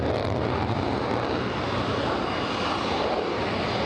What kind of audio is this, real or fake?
real